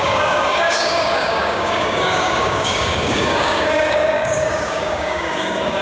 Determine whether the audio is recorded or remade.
remade